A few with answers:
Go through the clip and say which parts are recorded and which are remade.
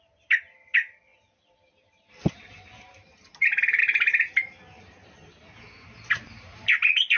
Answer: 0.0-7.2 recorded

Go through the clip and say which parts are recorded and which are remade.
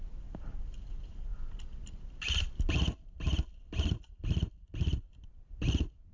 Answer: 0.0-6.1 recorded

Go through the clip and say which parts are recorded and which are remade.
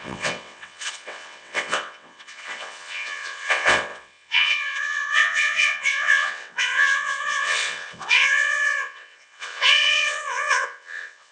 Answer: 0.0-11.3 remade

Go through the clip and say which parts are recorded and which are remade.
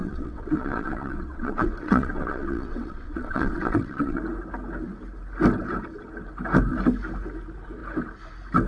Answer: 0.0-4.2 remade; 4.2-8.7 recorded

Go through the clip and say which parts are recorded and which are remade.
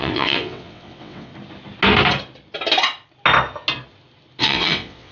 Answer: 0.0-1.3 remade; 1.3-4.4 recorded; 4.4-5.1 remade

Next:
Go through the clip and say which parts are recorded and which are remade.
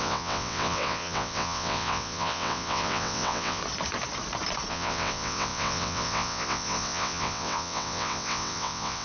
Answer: 0.0-3.6 remade; 3.6-4.7 recorded; 4.7-9.0 remade